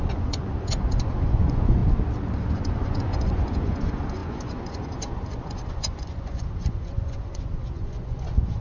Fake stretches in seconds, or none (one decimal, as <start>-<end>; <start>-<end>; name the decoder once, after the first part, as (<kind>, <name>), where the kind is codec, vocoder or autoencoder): 0.0-1.8 (vocoder, Vocos); 2.5-8.6